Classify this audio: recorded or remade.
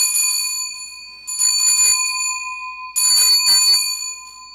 recorded